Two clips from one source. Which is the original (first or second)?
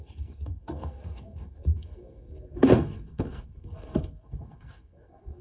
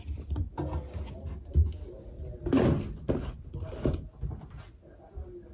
second